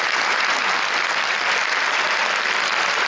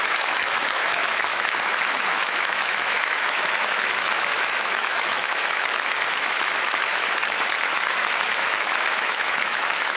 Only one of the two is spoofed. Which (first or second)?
second